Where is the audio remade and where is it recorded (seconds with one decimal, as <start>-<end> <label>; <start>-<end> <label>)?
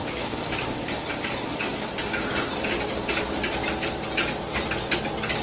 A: 0.0-0.6 remade; 0.6-5.4 recorded